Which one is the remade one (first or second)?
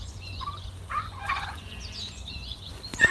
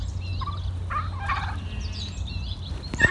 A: first